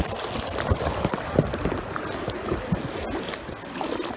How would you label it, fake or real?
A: real